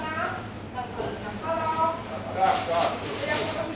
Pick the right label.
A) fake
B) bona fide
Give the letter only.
A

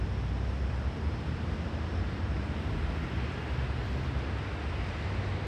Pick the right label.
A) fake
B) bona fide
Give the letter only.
B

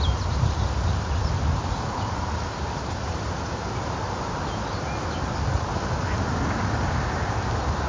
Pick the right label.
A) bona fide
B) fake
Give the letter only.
A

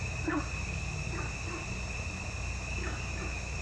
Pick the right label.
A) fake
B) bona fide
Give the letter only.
B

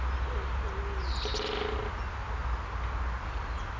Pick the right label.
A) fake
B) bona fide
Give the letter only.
B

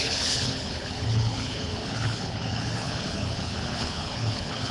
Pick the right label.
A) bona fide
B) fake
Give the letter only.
B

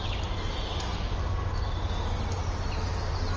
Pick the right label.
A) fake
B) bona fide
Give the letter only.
B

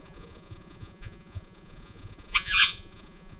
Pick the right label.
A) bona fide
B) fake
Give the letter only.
B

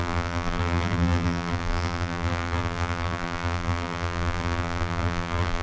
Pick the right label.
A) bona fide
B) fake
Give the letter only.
B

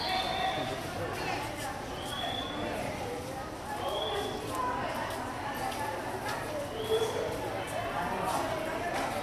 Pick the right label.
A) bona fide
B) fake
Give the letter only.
A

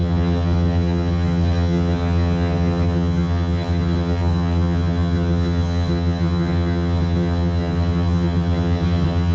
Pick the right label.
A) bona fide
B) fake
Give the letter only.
B